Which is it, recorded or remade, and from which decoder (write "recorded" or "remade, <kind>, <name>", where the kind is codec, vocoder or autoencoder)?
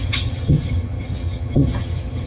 remade, vocoder, HiFi-GAN